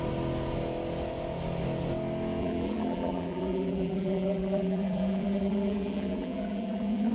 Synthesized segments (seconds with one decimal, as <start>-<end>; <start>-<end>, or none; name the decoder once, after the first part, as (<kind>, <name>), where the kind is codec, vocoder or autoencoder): 2.4-7.1 (vocoder, BigVGAN v2)